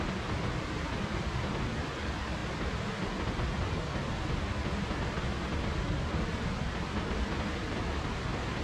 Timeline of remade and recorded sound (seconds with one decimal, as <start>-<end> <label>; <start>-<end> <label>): 0.0-8.6 recorded